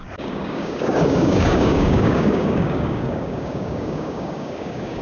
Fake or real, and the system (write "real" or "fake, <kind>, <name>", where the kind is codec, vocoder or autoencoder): fake, codec, DAC